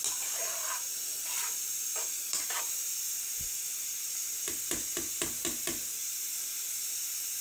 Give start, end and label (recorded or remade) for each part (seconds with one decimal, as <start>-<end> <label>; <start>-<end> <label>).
0.0-7.4 recorded

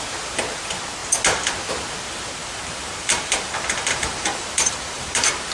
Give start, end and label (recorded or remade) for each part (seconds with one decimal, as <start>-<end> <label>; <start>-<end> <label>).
0.0-2.4 recorded; 2.4-5.5 remade